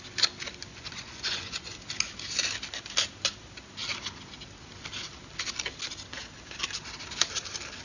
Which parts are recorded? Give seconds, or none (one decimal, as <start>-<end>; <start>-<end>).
0.0-0.7; 1.8-7.8